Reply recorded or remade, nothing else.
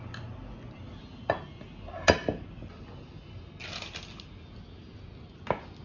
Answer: recorded